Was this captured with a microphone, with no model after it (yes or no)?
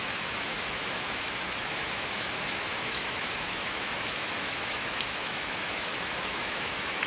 no